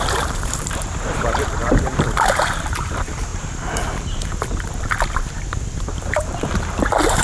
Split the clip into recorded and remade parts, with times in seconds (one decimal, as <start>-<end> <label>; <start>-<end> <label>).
0.0-7.2 remade